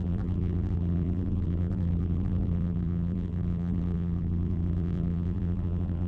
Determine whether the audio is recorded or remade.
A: remade